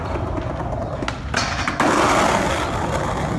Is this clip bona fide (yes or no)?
yes